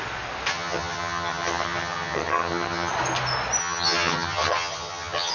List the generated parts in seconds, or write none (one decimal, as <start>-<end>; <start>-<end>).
0.5-2.9; 3.6-5.3